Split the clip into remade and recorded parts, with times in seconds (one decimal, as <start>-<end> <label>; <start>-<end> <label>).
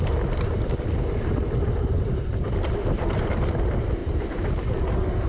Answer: 0.0-4.0 recorded; 4.0-4.6 remade; 4.6-5.3 recorded